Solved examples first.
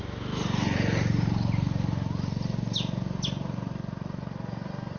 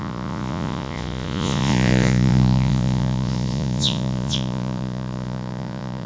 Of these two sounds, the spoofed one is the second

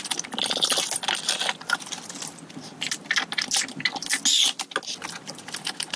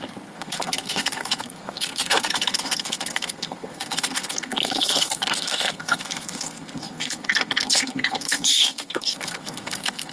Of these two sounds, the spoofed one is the second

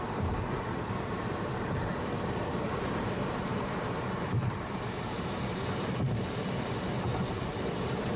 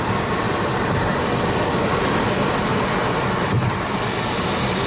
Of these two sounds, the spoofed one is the first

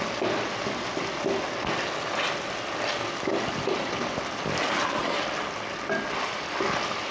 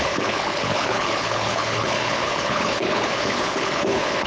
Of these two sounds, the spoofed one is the second